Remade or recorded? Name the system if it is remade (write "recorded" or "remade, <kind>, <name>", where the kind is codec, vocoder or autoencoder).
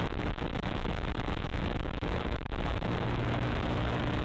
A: remade, autoencoder, DAC-VAE